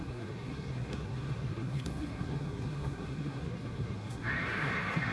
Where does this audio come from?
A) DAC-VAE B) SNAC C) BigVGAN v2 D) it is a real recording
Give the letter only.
B